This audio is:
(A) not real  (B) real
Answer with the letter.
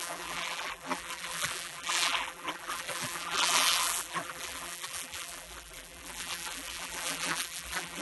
A